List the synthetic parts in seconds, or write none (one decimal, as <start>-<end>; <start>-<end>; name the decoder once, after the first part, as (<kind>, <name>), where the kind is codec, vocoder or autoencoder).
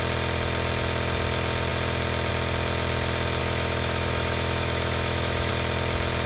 3.4-5.5 (autoencoder, DAC-VAE)